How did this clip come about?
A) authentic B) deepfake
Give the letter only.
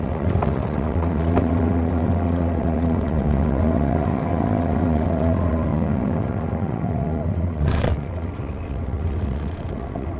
B